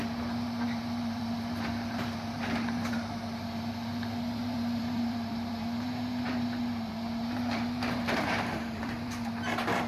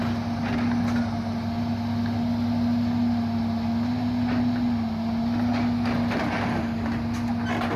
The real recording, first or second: second